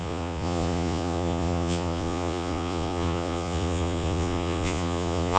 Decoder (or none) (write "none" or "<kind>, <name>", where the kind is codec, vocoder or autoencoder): vocoder, Vocos